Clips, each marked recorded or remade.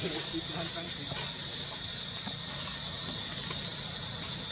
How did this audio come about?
recorded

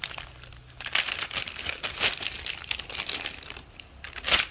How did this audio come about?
recorded